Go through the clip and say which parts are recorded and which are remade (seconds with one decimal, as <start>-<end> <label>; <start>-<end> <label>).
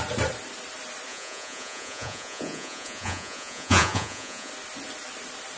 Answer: 0.0-1.1 recorded; 1.1-4.5 remade; 4.5-5.6 recorded